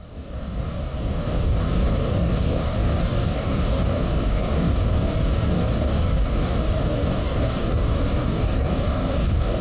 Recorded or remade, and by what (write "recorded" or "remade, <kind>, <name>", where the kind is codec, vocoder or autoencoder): remade, codec, DAC